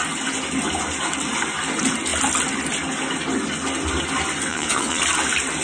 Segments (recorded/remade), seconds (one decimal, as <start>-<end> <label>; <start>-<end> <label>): 0.0-4.5 recorded; 4.5-5.0 remade; 5.0-5.6 recorded